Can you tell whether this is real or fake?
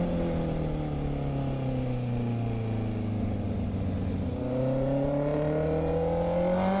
real